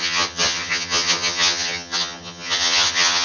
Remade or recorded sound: remade